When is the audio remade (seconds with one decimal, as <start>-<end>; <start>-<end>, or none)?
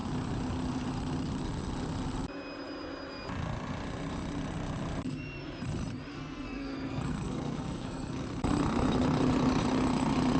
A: 6.1-8.2